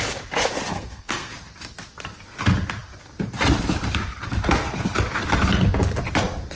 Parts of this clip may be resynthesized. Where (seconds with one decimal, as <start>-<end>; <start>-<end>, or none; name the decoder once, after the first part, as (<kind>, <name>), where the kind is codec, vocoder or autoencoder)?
0.7-1.3 (codec, SNAC)